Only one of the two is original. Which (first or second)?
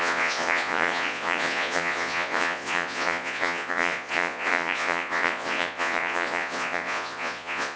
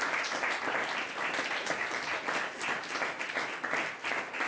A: second